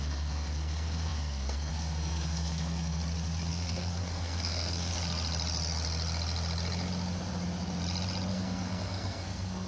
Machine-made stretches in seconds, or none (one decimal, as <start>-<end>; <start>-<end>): 0.0-3.0; 3.5-4.9; 8.3-9.7